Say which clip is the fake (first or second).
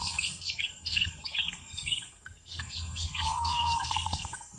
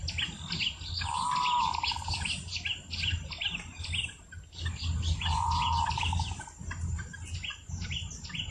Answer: first